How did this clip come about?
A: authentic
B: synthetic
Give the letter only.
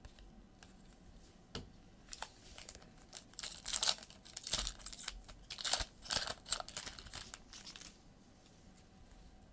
A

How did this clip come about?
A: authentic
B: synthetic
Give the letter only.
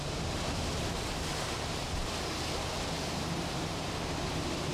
A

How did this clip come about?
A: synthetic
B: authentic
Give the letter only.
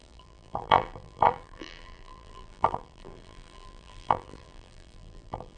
A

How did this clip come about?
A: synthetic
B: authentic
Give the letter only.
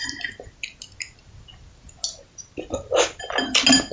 B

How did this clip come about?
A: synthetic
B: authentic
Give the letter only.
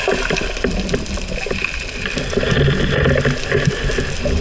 B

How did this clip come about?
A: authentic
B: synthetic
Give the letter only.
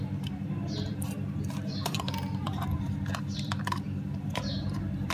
B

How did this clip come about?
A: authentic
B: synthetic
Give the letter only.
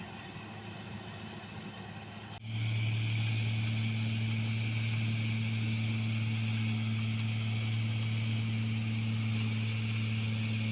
A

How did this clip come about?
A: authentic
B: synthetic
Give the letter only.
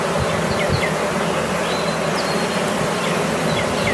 A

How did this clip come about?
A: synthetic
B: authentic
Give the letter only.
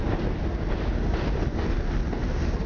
B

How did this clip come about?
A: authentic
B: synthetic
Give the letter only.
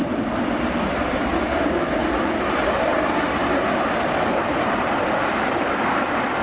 B